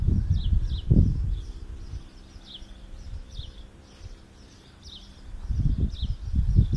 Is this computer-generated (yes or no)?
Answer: no